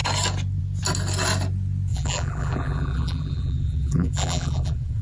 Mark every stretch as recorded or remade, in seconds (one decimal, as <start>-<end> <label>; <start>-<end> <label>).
0.0-1.9 recorded; 1.9-5.0 remade